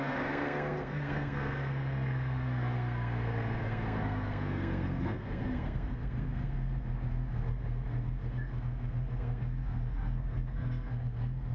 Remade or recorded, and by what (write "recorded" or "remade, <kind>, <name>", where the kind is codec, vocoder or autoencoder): remade, codec, SNAC